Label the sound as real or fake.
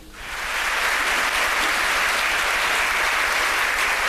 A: real